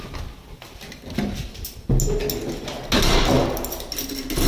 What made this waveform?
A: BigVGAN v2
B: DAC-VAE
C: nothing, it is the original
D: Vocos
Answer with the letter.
C